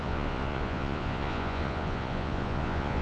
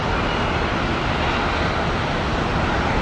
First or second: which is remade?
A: first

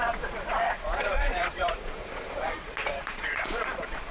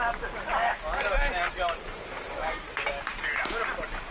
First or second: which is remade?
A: first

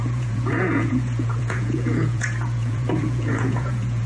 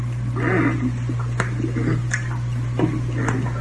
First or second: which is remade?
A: first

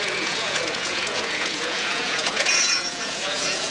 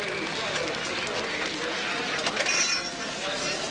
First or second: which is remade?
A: first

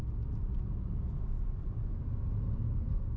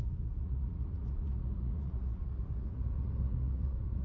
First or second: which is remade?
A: second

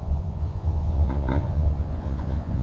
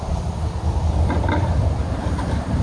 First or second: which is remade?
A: first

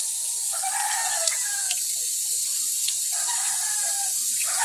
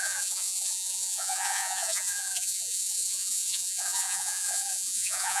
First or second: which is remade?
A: second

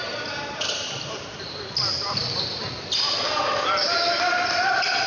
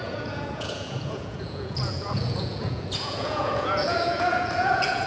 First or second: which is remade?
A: second